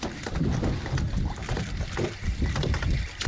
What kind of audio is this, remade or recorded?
recorded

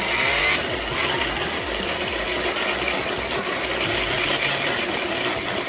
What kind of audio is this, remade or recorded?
recorded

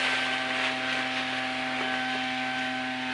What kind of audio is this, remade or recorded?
recorded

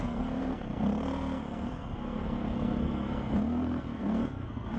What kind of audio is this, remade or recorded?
remade